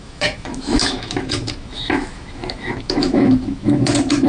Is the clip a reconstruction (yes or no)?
yes